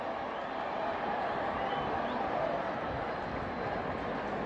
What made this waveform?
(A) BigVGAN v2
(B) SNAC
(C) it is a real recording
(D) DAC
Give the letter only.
C